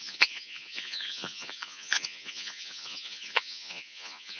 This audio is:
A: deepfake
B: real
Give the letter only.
A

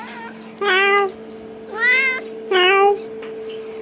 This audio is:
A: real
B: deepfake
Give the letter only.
A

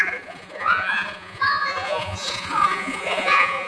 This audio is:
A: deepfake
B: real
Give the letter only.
A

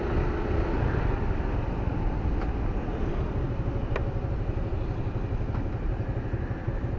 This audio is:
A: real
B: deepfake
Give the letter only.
A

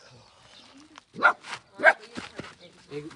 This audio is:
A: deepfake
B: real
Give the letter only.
B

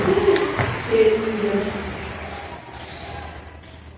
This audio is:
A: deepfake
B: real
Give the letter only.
B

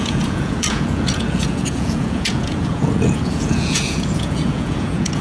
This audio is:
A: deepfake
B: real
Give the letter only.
A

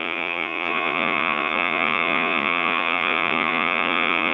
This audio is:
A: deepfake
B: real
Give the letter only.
A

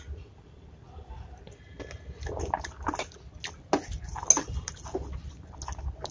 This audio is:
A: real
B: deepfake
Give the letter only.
A